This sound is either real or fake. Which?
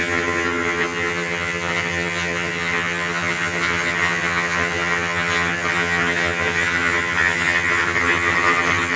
fake